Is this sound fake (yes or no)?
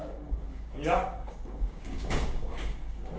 yes